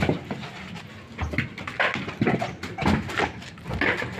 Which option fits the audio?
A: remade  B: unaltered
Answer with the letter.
B